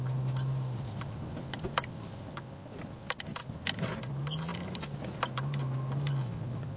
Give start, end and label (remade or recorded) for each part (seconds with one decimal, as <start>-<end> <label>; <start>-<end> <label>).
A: 0.0-6.8 recorded